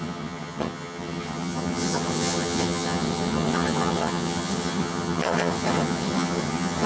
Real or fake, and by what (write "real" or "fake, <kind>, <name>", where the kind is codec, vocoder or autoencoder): fake, vocoder, HiFi-GAN